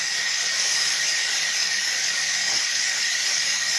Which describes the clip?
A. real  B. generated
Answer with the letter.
B